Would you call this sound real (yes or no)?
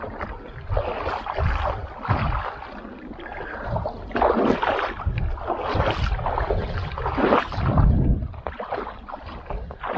yes